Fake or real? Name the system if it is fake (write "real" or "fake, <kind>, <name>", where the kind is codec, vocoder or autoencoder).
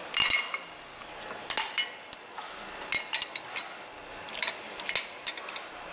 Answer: real